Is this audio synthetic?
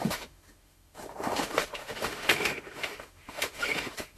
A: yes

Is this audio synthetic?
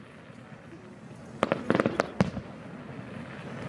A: no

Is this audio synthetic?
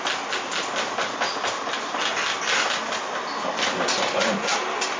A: no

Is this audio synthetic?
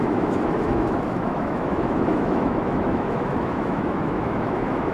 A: yes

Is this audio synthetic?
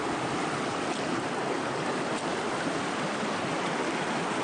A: no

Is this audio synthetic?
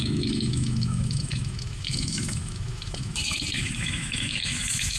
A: yes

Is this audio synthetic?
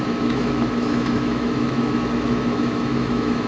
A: yes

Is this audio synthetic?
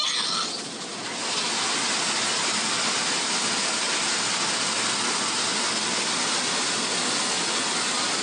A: no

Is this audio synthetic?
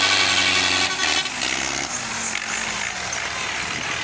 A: no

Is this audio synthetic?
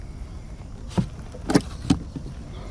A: no